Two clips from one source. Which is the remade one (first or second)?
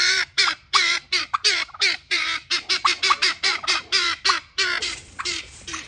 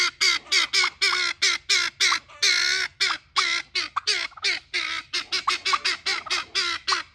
first